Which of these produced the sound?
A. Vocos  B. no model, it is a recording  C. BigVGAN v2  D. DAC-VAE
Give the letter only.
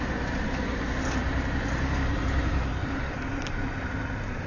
C